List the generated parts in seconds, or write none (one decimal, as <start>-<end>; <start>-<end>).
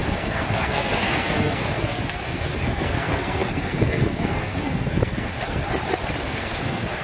0.0-5.7; 6.2-7.0